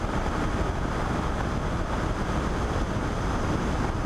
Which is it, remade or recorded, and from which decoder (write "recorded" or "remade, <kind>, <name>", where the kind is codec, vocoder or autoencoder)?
recorded